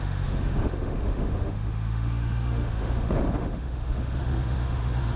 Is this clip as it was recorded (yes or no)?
no